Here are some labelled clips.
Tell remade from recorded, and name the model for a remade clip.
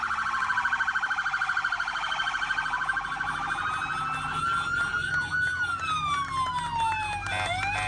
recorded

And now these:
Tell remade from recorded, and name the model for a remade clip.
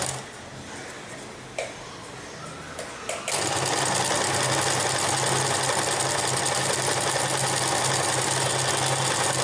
recorded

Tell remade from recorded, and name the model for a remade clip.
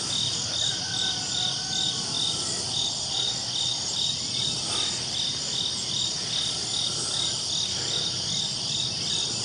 recorded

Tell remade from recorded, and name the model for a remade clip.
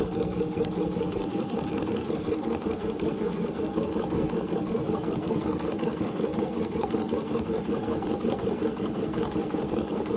remade, codec, SNAC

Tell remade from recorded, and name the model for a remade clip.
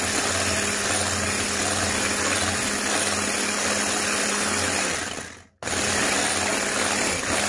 recorded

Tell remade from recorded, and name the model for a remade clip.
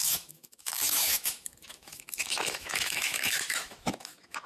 remade, autoencoder, DAC-VAE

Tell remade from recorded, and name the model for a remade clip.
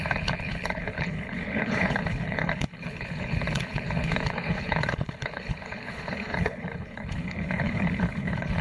remade, codec, HILCodec